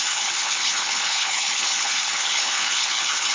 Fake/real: fake